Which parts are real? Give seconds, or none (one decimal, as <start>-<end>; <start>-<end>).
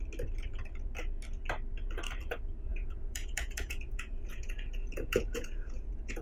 0.0-2.7